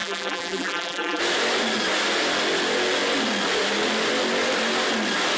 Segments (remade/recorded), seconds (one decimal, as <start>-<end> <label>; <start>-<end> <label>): 0.0-1.2 remade; 1.2-5.4 recorded